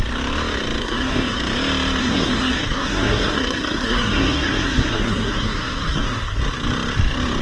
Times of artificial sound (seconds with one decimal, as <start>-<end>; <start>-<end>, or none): 0.8-1.4; 2.0-6.4